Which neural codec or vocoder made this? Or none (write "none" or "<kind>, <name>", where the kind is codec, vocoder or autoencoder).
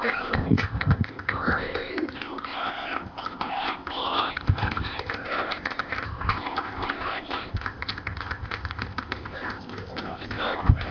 codec, ZipCodec